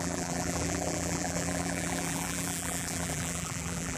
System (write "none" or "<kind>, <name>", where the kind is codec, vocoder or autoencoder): vocoder, BigVGAN v2